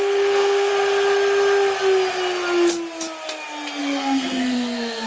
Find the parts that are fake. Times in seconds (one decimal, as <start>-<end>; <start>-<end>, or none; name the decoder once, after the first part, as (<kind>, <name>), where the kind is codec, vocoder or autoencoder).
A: 0.0-0.7 (codec, SNAC); 3.8-5.1